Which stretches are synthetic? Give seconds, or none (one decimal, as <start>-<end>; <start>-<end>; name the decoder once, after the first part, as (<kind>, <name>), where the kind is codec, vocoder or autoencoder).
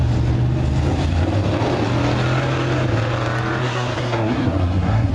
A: 3.6-5.1 (codec, SNAC)